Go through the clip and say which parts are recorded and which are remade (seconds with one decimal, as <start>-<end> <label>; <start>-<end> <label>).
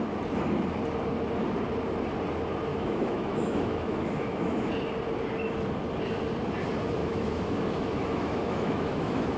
0.0-2.7 recorded; 2.7-4.7 remade; 4.7-7.0 recorded; 7.0-9.4 remade